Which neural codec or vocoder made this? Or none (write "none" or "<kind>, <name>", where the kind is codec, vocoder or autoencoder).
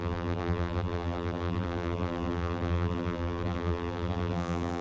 vocoder, BigVGAN v2